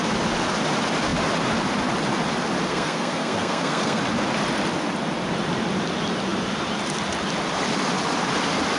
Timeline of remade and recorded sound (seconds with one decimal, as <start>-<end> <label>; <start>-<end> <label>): 0.0-2.7 recorded; 2.7-4.0 remade; 4.0-8.8 recorded